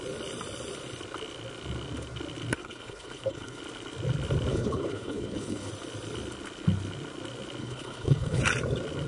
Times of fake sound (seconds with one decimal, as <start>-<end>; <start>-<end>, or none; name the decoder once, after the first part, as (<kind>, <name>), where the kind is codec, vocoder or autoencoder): 2.6-3.6 (codec, HILCodec); 4.5-5.7; 7.6-8.4